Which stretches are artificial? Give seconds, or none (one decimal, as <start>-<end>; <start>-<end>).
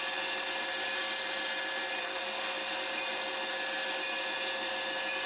2.0-2.7